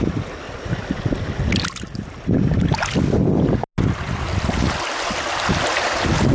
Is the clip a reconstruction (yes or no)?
no